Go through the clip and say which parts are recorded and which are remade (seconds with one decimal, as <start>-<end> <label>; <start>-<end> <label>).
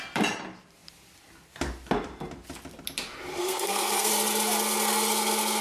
0.0-3.4 recorded; 3.4-4.1 remade; 4.1-5.6 recorded